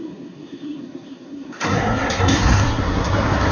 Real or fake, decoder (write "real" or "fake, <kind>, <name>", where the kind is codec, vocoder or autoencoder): fake, codec, SNAC